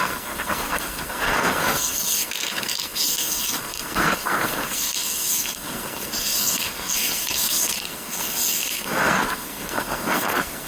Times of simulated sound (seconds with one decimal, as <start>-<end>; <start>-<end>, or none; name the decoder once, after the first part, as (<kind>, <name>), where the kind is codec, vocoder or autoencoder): 0.0-10.7 (codec, SNAC)